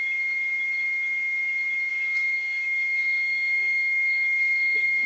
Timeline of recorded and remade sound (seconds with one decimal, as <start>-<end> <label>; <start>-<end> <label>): 0.0-1.9 recorded; 1.9-5.1 remade